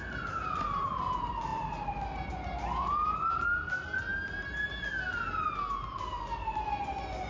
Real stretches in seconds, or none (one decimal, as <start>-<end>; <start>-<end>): 0.0-7.3